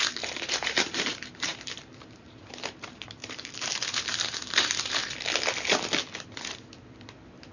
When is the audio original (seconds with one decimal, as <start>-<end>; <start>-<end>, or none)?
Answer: 5.0-7.5